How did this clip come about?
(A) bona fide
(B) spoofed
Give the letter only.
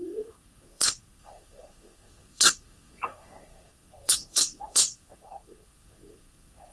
B